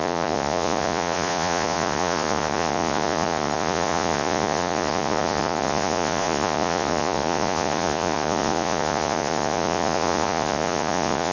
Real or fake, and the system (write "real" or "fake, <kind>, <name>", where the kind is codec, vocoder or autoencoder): fake, vocoder, Vocos